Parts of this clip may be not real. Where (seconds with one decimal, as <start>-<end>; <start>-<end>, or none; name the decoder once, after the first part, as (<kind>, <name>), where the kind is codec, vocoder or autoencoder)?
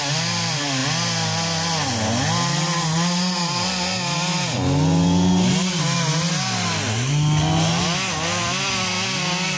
none